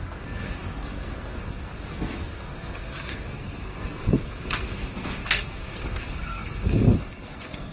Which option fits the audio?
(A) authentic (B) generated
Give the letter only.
B